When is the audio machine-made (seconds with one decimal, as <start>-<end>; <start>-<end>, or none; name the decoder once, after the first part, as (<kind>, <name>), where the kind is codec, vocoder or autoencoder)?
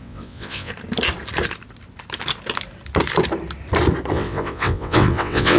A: 0.0-0.7 (vocoder, WaveNeXt); 4.1-5.6